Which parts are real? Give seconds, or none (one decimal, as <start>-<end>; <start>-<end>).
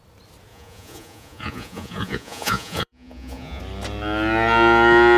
0.0-0.5; 3.6-5.2